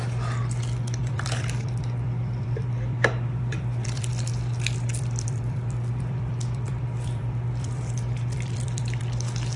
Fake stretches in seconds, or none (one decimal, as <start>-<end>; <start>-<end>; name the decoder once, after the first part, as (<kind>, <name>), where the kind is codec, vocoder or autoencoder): 1.0-4.1 (vocoder, BigVGAN v2); 4.9-9.0